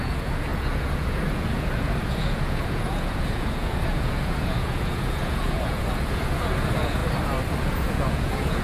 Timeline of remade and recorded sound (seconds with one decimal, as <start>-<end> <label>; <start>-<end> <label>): 0.0-7.0 remade; 7.0-7.6 recorded; 7.6-8.6 remade